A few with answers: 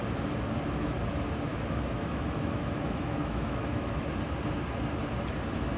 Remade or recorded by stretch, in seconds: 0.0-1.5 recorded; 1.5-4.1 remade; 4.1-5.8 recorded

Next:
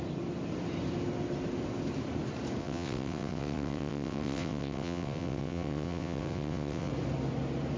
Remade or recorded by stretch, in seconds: 0.0-2.6 recorded; 2.6-6.9 remade; 6.9-7.8 recorded

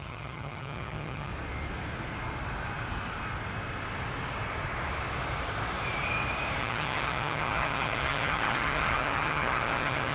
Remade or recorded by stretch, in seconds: 0.0-1.3 remade; 1.3-6.6 recorded; 6.6-10.1 remade

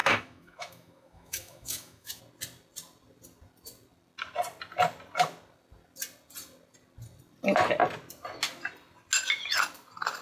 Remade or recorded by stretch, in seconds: 0.0-2.2 remade; 2.2-10.2 recorded

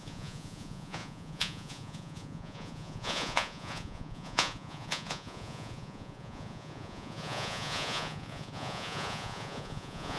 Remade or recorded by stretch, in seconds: 0.0-10.2 remade